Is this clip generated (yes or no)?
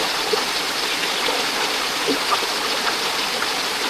no